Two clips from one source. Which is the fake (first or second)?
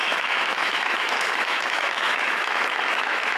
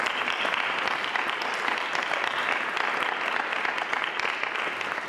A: first